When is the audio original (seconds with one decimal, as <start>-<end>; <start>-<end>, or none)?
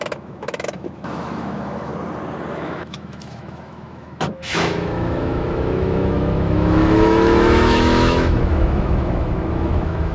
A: 1.9-2.5